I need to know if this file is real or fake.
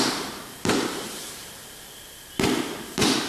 fake